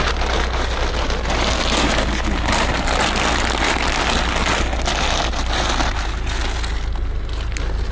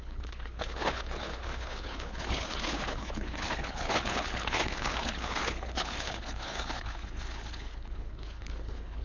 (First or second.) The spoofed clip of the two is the second